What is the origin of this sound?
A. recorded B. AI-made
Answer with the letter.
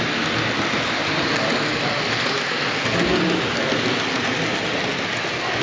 A